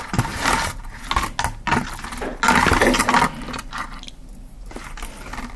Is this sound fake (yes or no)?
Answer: no